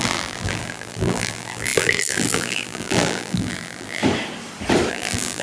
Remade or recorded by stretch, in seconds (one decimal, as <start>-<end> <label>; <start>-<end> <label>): 0.0-4.0 remade; 4.0-4.9 recorded; 4.9-5.4 remade